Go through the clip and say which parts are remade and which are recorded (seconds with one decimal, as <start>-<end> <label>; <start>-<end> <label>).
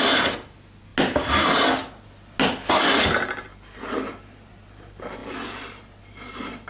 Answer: 0.0-6.7 recorded